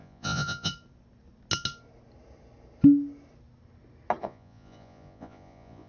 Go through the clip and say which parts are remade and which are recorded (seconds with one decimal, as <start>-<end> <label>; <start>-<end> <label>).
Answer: 0.0-0.7 remade; 0.7-4.2 recorded; 4.2-5.9 remade